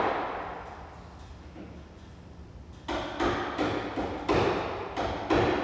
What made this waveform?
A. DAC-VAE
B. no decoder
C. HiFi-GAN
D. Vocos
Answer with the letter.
B